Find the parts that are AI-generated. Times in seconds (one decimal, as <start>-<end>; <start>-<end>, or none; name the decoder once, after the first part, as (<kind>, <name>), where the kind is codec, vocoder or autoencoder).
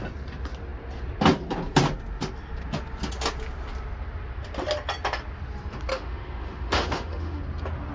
5.9-7.4 (autoencoder, DAC-VAE)